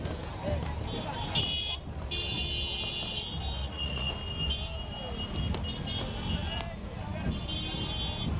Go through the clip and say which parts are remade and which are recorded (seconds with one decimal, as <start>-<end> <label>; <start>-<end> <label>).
0.0-3.6 recorded; 3.6-4.1 remade; 4.1-8.4 recorded